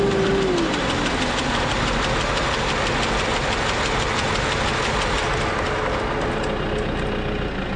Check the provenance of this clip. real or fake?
real